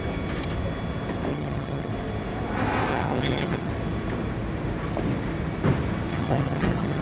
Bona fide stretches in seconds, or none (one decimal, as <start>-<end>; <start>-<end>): 0.0-1.3; 1.9-2.9; 3.7-6.1